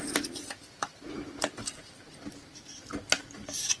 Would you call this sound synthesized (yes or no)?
no